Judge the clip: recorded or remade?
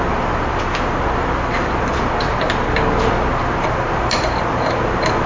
remade